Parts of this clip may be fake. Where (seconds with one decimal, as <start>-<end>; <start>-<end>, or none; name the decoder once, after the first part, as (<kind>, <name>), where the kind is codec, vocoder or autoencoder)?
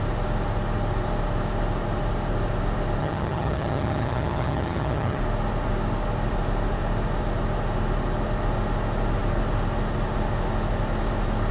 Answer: 3.0-5.2 (vocoder, HiFi-GAN)